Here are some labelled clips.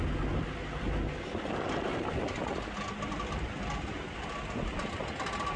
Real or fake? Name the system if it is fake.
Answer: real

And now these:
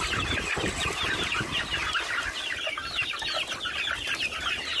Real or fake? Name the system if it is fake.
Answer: real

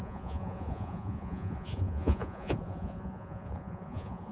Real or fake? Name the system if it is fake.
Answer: fake, vocoder, Vocos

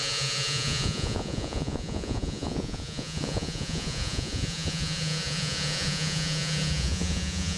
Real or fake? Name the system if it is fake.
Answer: fake, vocoder, Vocos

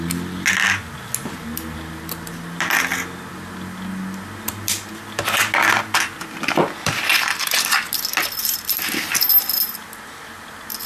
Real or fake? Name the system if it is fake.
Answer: real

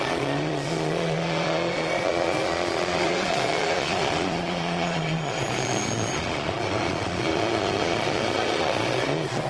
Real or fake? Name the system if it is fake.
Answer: fake, vocoder, Vocos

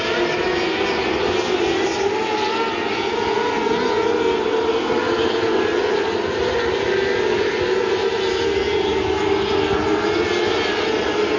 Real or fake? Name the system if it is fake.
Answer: real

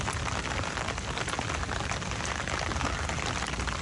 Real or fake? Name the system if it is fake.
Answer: real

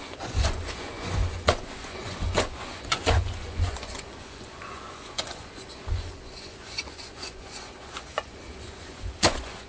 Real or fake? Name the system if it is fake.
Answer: fake, vocoder, Vocos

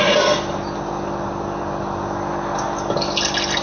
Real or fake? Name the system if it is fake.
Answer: real